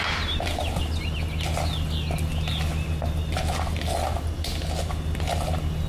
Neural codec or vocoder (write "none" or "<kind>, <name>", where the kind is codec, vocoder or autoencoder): none